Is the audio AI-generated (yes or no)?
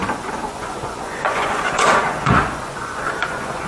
yes